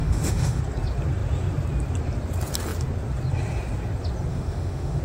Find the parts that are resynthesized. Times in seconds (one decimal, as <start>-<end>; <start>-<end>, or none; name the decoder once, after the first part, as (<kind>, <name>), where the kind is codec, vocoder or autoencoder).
0.0-0.6 (autoencoder, DAC-VAE); 4.3-5.0